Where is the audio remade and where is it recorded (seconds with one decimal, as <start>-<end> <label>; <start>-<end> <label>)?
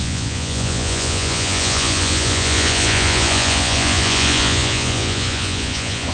0.0-6.1 remade